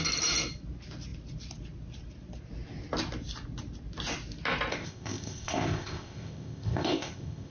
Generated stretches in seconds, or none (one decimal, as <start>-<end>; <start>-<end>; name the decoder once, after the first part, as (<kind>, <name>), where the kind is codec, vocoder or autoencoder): 4.7-7.5 (codec, ZipCodec)